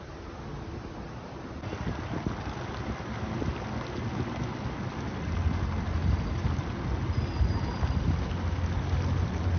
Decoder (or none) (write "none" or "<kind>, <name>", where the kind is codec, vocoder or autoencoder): none